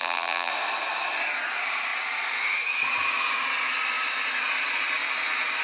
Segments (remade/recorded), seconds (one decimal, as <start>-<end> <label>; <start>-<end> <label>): 0.0-0.5 remade; 0.5-5.6 recorded